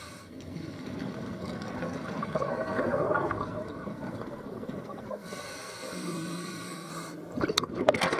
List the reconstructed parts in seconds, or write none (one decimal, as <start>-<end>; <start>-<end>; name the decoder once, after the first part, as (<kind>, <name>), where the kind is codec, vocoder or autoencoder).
0.0-6.9 (codec, SNAC); 7.5-8.2